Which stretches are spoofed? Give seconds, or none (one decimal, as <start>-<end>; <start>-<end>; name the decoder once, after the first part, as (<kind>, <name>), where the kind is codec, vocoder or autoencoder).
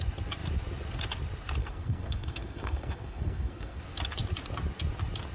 1.6-3.8 (codec, SNAC)